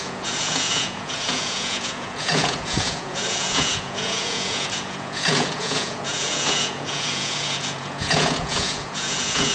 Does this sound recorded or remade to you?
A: remade